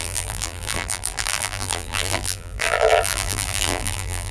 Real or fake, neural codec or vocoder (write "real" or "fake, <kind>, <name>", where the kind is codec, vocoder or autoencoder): fake, vocoder, BigVGAN v2